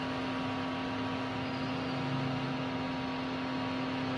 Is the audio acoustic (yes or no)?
yes